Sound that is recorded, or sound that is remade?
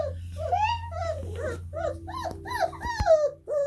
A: recorded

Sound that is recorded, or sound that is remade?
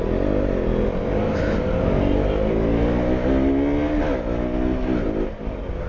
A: recorded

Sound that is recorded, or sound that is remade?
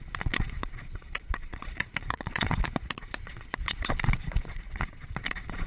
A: remade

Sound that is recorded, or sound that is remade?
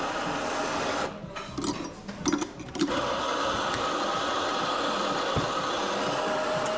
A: recorded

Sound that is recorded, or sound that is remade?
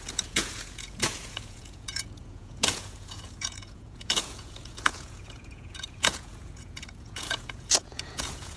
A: remade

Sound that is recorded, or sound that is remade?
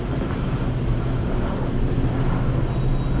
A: recorded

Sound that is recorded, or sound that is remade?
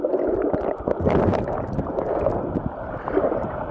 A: recorded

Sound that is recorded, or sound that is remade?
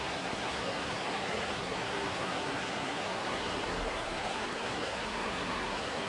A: remade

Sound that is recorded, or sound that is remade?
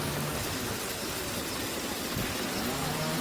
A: recorded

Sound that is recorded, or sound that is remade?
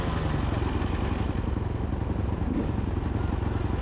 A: recorded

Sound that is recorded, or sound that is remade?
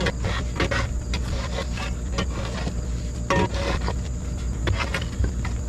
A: recorded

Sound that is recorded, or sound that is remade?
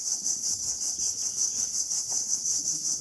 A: remade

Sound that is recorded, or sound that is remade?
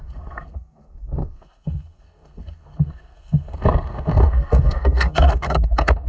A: remade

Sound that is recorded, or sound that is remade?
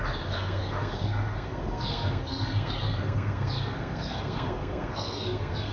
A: remade